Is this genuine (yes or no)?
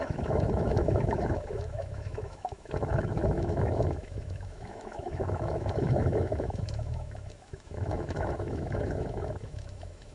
no